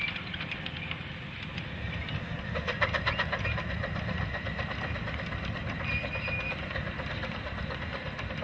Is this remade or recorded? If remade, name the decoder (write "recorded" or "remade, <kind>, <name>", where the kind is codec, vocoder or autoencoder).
recorded